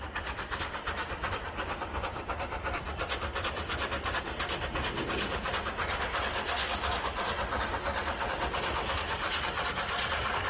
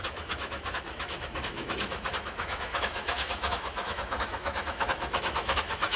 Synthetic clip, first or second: second